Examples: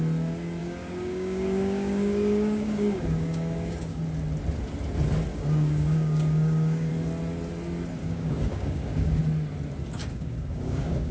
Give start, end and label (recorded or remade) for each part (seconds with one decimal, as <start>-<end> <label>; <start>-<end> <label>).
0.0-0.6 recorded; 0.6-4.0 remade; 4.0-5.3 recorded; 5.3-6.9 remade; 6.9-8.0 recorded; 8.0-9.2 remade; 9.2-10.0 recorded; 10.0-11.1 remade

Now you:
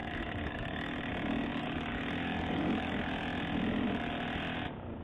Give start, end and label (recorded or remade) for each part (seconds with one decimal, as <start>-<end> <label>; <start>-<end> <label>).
0.0-1.1 remade; 1.1-1.5 recorded; 1.5-3.1 remade; 3.1-5.0 recorded

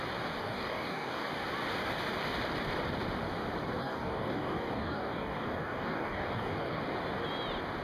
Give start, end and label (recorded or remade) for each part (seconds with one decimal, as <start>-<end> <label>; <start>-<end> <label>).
0.0-0.4 recorded; 0.4-1.3 remade; 1.3-3.8 recorded; 3.8-6.8 remade; 6.8-7.8 recorded